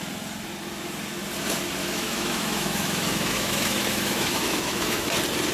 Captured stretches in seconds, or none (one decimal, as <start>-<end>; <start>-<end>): 0.0-1.8; 5.1-5.5